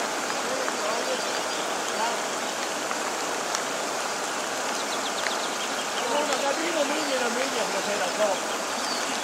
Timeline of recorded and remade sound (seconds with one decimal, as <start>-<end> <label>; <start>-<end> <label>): 0.0-6.6 recorded; 6.6-8.0 remade; 8.0-9.2 recorded